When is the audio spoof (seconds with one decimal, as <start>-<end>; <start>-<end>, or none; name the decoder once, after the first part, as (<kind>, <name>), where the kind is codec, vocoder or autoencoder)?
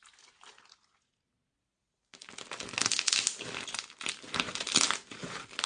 none